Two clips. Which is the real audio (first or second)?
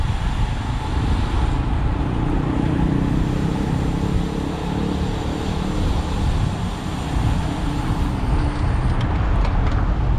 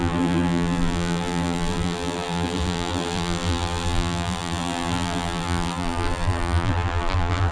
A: first